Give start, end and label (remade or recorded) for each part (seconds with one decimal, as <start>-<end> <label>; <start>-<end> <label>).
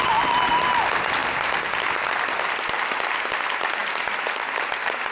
0.0-5.1 recorded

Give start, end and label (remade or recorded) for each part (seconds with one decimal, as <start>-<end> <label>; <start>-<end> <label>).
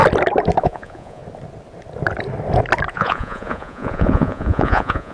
0.0-0.6 recorded; 0.6-1.2 remade; 1.2-2.9 recorded; 2.9-5.1 remade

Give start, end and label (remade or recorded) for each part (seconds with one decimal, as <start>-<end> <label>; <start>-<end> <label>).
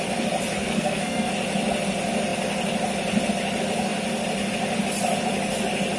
0.0-0.6 recorded; 0.6-1.3 remade; 1.3-6.0 recorded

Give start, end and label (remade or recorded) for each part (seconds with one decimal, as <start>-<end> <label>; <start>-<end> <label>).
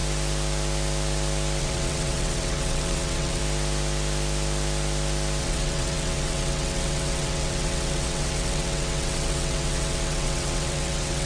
0.0-1.6 recorded; 1.6-3.4 remade; 3.4-5.4 recorded; 5.4-11.3 remade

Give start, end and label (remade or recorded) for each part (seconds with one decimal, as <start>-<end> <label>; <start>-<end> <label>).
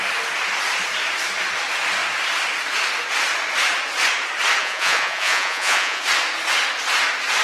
0.0-4.6 recorded; 4.6-6.0 remade; 6.0-7.4 recorded